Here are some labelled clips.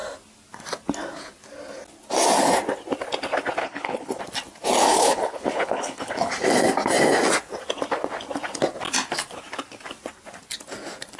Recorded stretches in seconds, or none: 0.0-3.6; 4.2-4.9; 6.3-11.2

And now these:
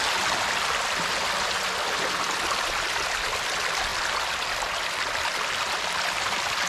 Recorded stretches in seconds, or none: 0.0-6.7